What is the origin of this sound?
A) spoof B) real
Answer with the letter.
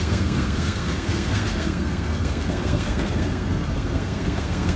A